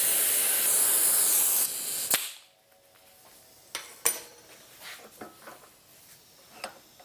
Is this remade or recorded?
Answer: recorded